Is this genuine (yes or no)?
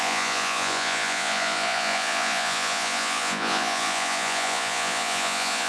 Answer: no